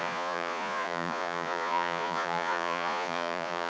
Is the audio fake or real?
fake